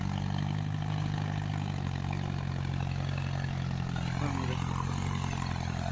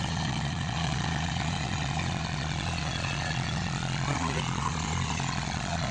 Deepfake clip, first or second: second